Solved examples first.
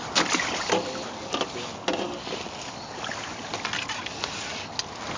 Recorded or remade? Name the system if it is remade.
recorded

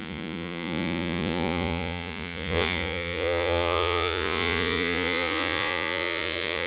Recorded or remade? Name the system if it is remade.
remade, vocoder, Vocos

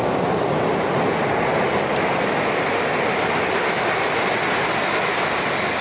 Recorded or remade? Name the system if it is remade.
recorded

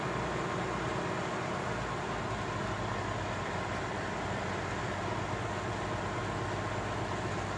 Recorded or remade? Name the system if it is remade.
recorded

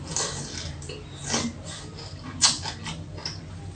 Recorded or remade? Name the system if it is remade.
recorded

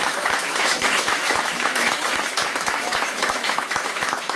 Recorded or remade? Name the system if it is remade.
remade, autoencoder, DAC-VAE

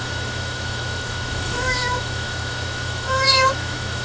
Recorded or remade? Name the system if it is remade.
remade, autoencoder, DAC-VAE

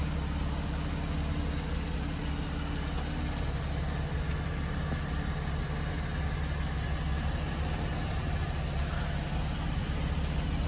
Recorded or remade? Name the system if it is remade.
recorded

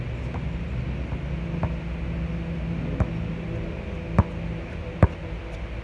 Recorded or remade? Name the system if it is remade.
recorded